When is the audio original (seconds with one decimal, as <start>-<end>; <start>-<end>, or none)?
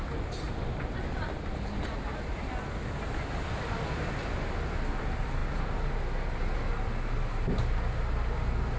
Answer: 0.0-8.8